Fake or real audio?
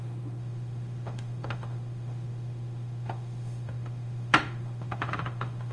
fake